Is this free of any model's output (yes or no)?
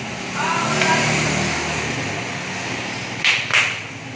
yes